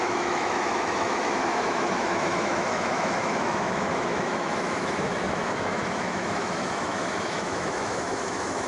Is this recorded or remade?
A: remade